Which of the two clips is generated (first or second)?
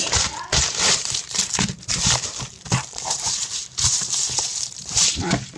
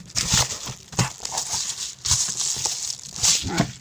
first